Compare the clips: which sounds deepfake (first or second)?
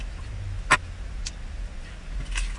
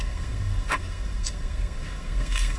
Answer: second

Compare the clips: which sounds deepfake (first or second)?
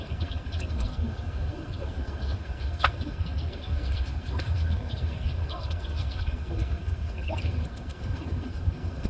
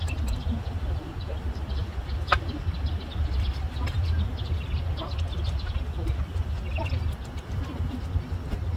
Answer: first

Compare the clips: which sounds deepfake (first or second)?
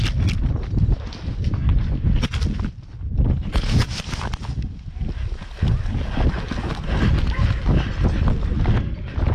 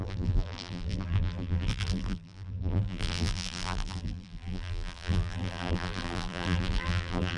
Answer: second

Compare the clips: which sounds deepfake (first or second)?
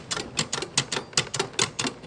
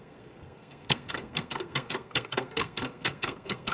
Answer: second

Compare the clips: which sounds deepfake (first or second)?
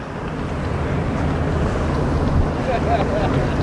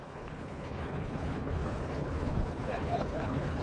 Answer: second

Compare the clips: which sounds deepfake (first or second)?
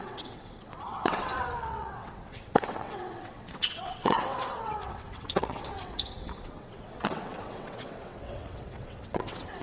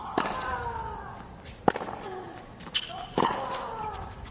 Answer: first